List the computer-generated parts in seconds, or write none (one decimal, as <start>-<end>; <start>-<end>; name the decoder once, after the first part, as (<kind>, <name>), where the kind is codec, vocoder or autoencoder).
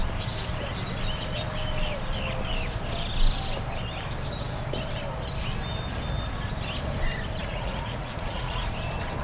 7.4-8.7 (vocoder, Vocos)